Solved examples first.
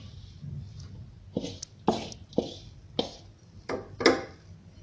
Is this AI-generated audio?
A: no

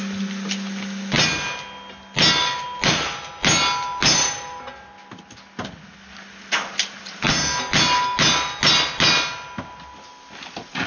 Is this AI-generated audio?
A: no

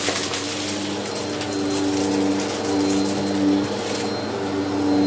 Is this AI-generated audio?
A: no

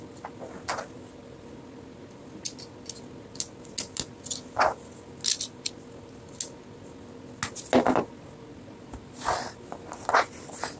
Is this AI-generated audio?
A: no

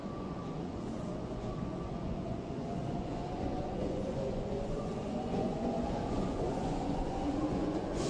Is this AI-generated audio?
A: yes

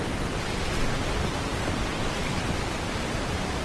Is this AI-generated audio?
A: no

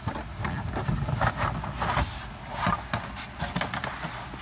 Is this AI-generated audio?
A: no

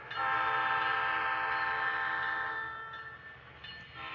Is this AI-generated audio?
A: no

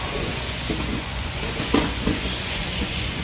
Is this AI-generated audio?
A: yes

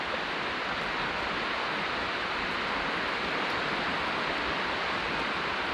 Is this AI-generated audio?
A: no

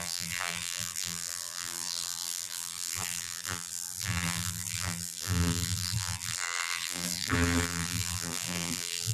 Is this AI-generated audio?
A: yes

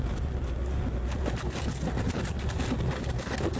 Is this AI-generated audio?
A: no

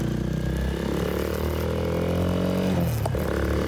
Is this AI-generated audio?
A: no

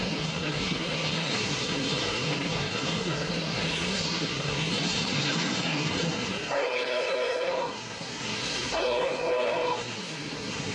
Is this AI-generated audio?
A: yes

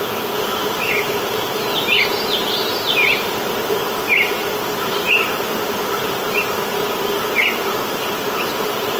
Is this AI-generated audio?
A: no